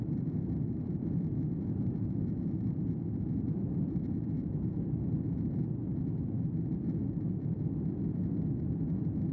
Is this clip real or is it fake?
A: fake